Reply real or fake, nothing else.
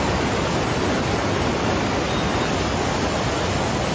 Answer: real